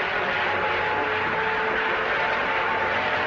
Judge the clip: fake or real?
real